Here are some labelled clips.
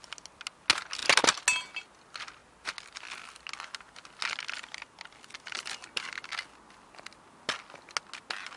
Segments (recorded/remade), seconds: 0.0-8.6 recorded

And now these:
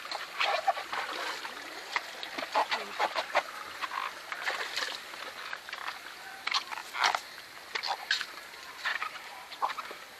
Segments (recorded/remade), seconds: 0.0-8.9 recorded; 8.9-9.7 remade; 9.7-10.2 recorded

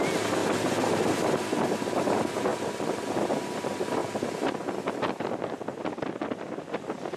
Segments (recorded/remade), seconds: 0.0-2.5 recorded; 2.5-3.3 remade; 3.3-4.0 recorded; 4.0-4.5 remade; 4.5-7.2 recorded

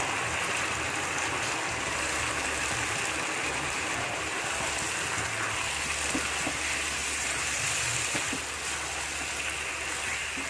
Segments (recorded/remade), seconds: 0.0-3.4 recorded; 3.4-4.8 remade; 4.8-7.0 recorded; 7.0-7.9 remade; 7.9-10.5 recorded

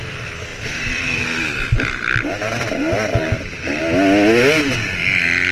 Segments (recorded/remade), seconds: 0.0-0.5 recorded; 0.5-3.8 remade; 3.8-5.5 recorded

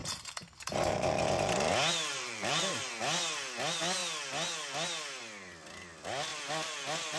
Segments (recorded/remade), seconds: 0.0-1.7 remade; 1.7-2.1 recorded; 2.1-2.9 remade; 2.9-7.2 recorded